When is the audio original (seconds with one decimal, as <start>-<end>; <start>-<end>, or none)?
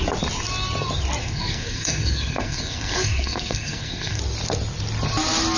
0.0-1.2; 4.2-5.6